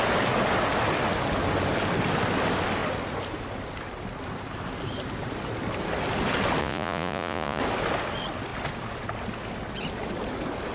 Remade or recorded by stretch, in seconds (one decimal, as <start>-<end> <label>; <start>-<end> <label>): 0.0-6.6 recorded; 6.6-7.6 remade; 7.6-10.7 recorded